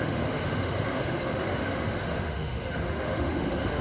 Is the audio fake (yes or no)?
yes